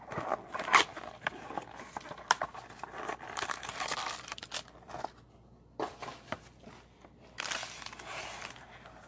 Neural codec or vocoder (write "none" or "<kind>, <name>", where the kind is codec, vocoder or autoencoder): none